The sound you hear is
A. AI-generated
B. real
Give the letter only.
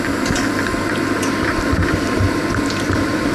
B